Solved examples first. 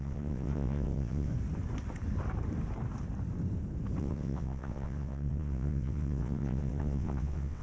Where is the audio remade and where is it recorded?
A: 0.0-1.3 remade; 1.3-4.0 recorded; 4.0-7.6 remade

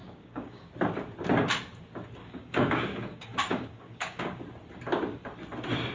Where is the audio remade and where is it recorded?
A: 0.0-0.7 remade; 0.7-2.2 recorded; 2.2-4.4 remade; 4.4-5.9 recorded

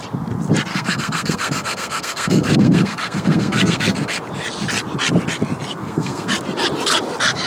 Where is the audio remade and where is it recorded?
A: 0.0-0.7 recorded; 0.7-4.2 remade; 4.2-5.7 recorded; 5.7-6.3 remade; 6.3-7.5 recorded

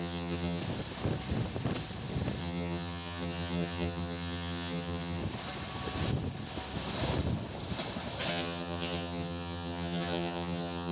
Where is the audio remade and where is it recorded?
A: 0.0-0.6 remade; 0.6-2.4 recorded; 2.4-5.2 remade; 5.2-8.3 recorded; 8.3-10.9 remade

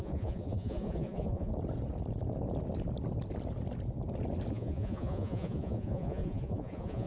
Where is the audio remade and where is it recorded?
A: 0.0-1.5 remade; 1.5-4.5 recorded; 4.5-7.1 remade